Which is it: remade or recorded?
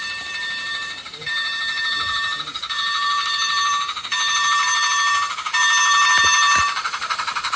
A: remade